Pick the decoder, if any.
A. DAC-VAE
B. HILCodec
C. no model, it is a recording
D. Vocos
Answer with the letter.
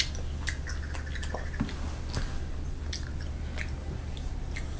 C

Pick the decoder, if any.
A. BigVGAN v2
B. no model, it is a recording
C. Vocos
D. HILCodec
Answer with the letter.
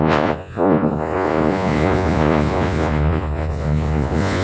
C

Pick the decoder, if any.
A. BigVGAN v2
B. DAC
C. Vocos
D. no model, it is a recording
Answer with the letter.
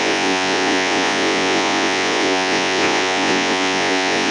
C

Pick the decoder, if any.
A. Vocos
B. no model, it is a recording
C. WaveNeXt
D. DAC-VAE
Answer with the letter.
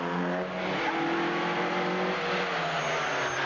B